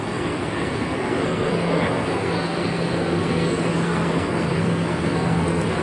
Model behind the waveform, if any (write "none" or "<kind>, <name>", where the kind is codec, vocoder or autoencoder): codec, SNAC